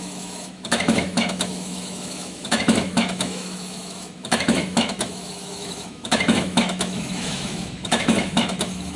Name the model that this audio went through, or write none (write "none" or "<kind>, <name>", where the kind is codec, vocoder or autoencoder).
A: autoencoder, DAC-VAE